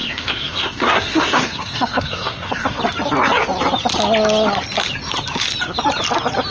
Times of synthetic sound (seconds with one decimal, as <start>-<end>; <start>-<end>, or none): 0.0-2.8